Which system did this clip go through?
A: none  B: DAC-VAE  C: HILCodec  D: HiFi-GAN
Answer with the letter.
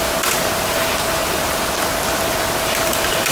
A